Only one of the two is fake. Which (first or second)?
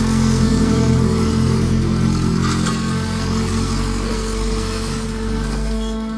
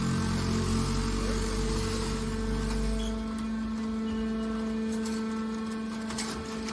first